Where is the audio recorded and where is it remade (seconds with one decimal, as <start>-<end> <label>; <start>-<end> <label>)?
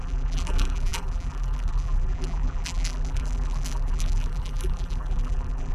0.0-5.7 remade